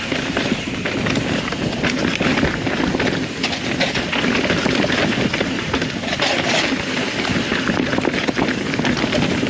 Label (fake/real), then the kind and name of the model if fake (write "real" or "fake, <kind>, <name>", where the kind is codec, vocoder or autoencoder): real